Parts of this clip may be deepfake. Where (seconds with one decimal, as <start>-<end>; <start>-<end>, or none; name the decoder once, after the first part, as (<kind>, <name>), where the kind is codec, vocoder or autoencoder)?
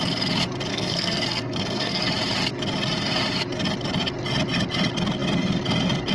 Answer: 0.7-2.0 (codec, SNAC)